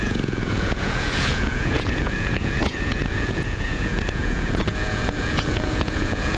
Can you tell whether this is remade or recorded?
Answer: remade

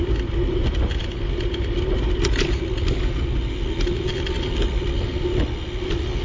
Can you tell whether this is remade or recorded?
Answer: recorded